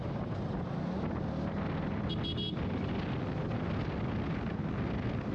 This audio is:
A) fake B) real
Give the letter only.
B